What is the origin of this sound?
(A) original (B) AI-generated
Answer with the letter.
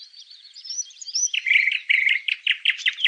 B